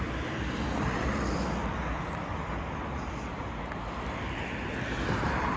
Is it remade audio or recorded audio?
recorded